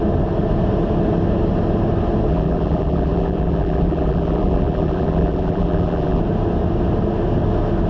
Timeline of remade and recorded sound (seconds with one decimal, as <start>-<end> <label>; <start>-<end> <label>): 0.0-2.3 recorded; 2.3-6.2 remade; 6.2-7.9 recorded